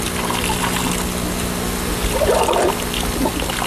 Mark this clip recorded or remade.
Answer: recorded